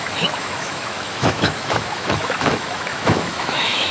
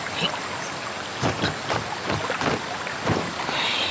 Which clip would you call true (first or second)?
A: second